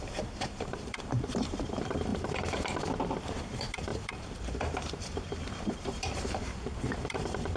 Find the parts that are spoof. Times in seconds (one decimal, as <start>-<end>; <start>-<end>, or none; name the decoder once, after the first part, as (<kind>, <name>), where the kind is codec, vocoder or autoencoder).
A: 0.0-7.6 (vocoder, BigVGAN v2)